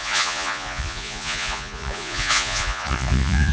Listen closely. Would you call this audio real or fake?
fake